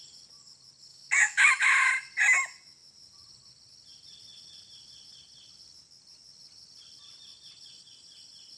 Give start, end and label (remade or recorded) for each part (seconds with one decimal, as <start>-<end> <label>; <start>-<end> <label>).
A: 0.0-0.9 recorded; 0.9-1.9 remade; 1.9-8.6 recorded